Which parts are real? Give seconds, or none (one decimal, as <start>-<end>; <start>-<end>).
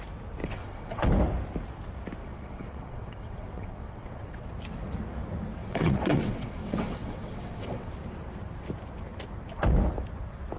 0.0-0.4; 1.1-2.2; 4.5-5.6; 7.9-10.6